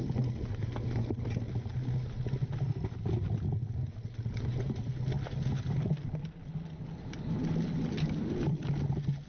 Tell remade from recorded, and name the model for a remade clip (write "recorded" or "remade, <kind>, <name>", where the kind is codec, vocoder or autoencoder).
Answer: recorded